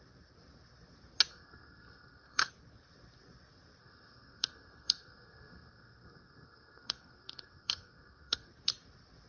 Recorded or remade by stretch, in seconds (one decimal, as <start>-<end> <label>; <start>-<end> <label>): 0.0-1.3 recorded; 1.3-2.5 remade; 2.5-3.8 recorded; 3.8-8.5 remade; 8.5-9.3 recorded